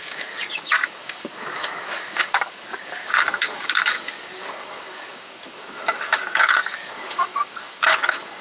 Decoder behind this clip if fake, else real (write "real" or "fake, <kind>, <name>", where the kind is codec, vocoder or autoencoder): fake, codec, DAC